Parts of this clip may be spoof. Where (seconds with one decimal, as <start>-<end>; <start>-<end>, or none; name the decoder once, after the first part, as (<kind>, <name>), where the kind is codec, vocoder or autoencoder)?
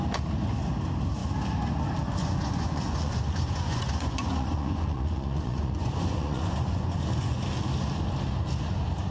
2.2-7.4 (vocoder, Vocos)